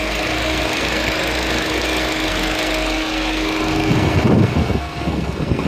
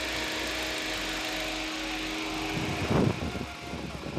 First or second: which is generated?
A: first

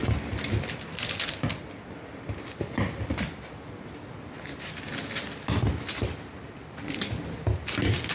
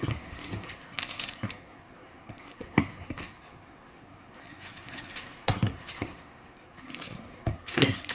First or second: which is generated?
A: second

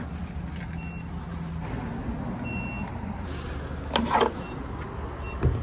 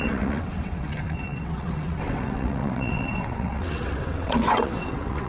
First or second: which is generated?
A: second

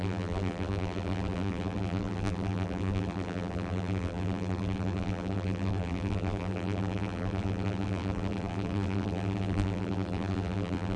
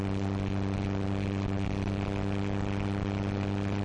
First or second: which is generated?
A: first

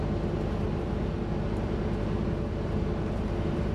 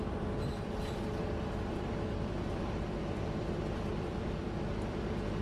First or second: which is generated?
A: second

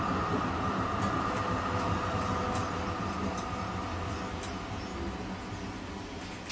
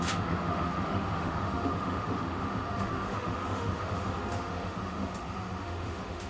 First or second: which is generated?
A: second